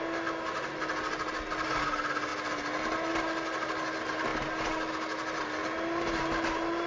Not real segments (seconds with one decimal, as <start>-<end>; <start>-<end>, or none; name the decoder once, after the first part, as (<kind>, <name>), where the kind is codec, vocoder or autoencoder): none

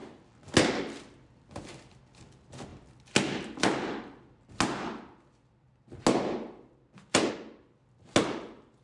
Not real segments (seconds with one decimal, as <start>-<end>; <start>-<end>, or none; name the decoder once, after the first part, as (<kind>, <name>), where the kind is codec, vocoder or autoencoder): none

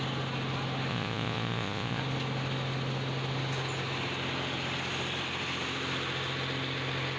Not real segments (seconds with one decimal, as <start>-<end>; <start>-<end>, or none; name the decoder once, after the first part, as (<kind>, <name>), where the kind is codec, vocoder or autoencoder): 0.9-2.0 (vocoder, Vocos)

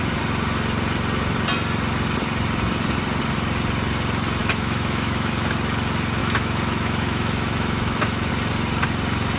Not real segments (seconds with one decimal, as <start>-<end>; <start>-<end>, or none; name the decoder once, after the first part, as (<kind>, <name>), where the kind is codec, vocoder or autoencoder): 4.4-5.3 (autoencoder, DAC-VAE); 6.2-8.3

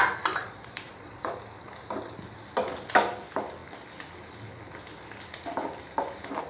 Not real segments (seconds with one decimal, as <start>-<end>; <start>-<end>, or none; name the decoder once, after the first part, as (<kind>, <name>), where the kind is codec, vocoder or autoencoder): 0.4-1.4 (vocoder, Vocos)

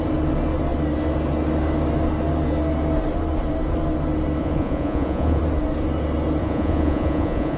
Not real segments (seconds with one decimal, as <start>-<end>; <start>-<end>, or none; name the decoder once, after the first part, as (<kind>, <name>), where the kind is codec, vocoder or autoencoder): 4.4-5.4 (vocoder, Vocos); 6.4-7.6

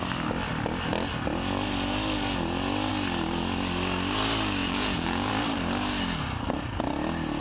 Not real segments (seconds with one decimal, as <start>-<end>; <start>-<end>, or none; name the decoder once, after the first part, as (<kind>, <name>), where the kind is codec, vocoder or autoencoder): 4.6-5.3 (vocoder, Vocos)

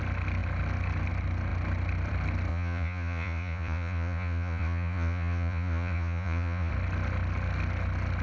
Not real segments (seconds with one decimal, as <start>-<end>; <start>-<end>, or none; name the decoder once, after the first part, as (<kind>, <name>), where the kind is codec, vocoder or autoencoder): 2.5-6.7 (vocoder, Vocos)